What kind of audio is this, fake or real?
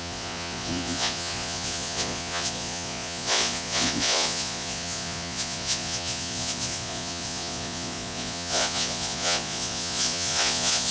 fake